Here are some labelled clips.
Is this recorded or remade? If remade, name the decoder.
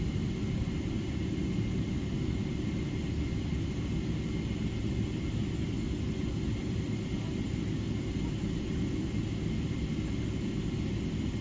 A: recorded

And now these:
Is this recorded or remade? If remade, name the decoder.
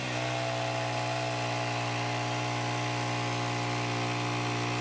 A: recorded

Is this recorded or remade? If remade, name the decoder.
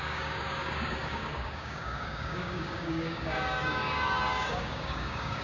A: remade, codec, DAC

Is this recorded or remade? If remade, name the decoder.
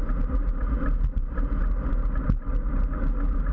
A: recorded